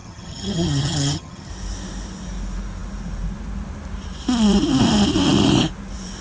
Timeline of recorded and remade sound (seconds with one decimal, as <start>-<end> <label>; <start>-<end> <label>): 0.0-1.5 remade; 1.5-6.2 recorded